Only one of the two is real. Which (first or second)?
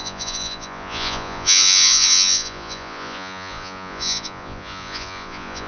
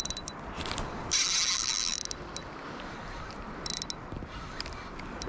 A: second